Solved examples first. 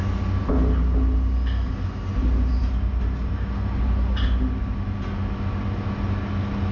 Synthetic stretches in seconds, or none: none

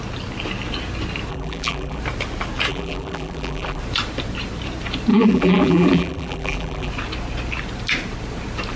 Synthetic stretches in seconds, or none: 1.3-2.0 (vocoder, BigVGAN v2); 2.7-3.8; 5.1-6.9

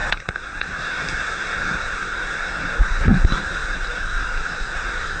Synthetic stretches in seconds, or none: 0.0-5.2 (codec, SNAC)

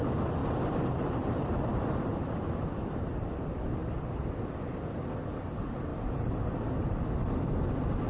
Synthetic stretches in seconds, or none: none

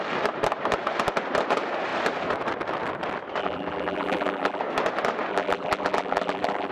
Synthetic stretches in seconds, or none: 3.4-4.6 (vocoder, BigVGAN v2); 5.3-6.7

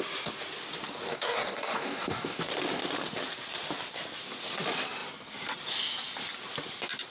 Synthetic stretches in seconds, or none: 1.1-2.4 (codec, DAC)